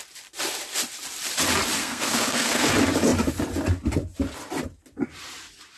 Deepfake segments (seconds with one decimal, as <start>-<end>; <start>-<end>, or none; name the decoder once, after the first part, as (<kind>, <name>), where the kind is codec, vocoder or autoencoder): 1.8-2.7 (codec, SNAC)